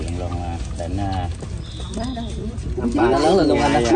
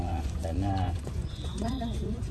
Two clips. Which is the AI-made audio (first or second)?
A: second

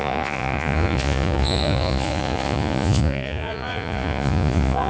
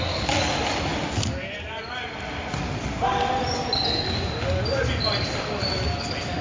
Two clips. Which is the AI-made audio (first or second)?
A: first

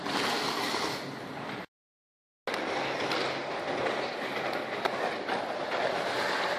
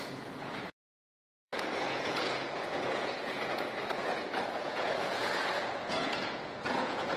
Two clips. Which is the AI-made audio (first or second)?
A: second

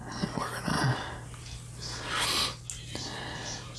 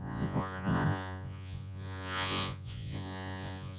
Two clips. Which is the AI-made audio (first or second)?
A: second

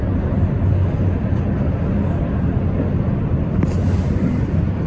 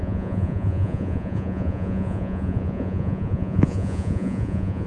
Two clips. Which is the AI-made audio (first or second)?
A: second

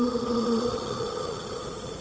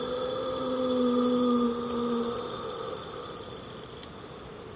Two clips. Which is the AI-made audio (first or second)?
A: first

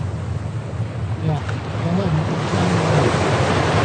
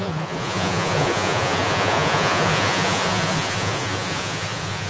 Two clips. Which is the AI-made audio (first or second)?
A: second